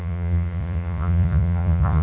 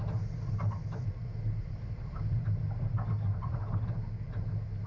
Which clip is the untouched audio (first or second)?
second